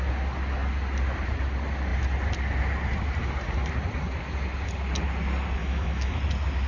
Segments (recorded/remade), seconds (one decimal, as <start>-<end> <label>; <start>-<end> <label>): 0.0-5.6 recorded; 5.6-6.2 remade; 6.2-6.7 recorded